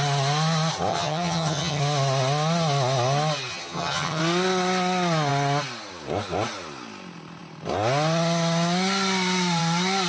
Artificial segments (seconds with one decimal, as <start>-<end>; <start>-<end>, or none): 0.9-1.8; 3.5-4.2